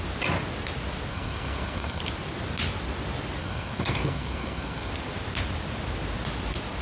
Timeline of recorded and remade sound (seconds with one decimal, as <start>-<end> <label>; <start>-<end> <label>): 0.0-1.1 recorded; 1.1-2.0 remade; 2.0-3.4 recorded; 3.4-4.9 remade; 4.9-6.8 recorded